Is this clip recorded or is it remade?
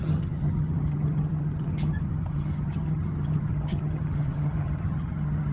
remade